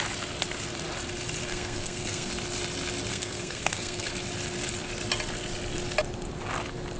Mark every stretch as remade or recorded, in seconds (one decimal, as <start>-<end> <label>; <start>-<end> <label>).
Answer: 0.0-1.5 recorded; 1.5-2.3 remade; 2.3-3.1 recorded; 3.1-4.1 remade; 4.1-7.0 recorded